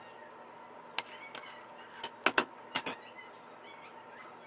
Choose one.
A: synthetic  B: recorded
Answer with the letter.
B